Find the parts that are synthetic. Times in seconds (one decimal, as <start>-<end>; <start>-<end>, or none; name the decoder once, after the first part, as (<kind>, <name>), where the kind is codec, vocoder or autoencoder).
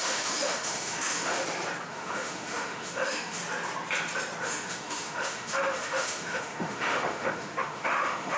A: 0.0-1.4 (autoencoder, DAC-VAE); 1.9-3.4; 4.4-8.4